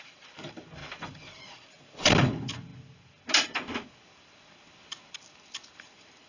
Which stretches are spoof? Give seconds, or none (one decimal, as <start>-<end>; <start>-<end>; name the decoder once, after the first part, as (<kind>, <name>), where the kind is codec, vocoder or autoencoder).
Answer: 0.8-2.1 (vocoder, BigVGAN v2)